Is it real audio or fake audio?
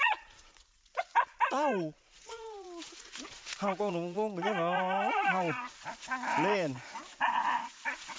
fake